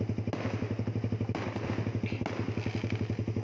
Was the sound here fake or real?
real